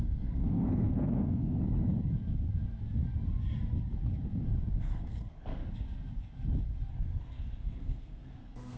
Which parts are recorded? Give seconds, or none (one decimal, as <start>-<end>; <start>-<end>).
1.6-4.8; 5.6-6.9